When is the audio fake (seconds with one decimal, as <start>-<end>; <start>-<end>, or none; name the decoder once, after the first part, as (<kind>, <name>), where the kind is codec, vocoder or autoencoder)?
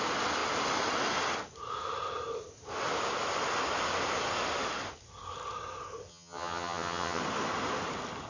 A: 6.1-7.2 (vocoder, HiFi-GAN)